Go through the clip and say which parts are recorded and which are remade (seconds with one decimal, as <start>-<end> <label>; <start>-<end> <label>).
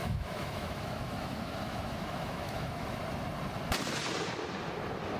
0.0-3.0 remade; 3.0-5.2 recorded